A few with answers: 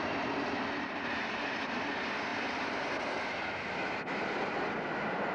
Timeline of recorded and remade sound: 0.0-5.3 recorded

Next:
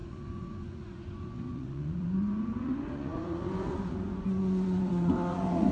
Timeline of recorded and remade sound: 0.0-5.7 remade

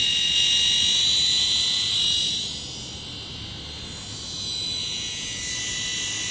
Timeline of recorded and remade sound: 0.0-4.8 recorded; 4.8-5.4 remade; 5.4-6.3 recorded

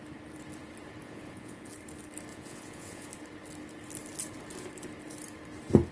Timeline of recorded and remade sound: 0.0-1.0 recorded; 1.0-1.7 remade; 1.7-2.3 recorded; 2.3-3.1 remade; 3.1-5.9 recorded

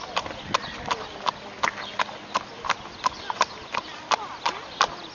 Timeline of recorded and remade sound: 0.0-5.1 recorded

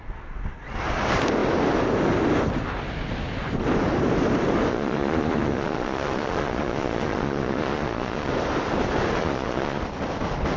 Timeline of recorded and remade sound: 0.0-4.7 recorded; 4.7-8.3 remade; 8.3-9.2 recorded; 9.2-9.8 remade; 9.8-10.6 recorded